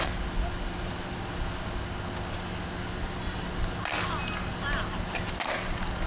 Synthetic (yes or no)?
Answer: no